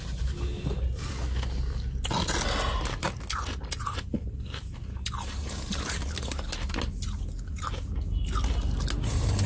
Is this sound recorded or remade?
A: recorded